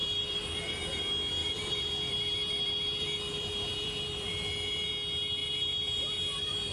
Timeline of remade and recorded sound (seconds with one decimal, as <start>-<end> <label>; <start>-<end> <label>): 0.0-1.0 remade; 1.0-1.4 recorded; 1.4-4.9 remade; 4.9-5.4 recorded; 5.4-6.7 remade